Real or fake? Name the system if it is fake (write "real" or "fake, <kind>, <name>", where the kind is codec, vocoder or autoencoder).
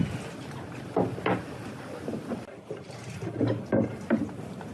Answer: real